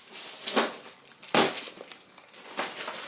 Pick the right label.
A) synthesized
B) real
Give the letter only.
B